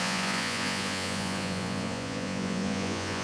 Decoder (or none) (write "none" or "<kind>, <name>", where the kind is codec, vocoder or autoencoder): vocoder, Vocos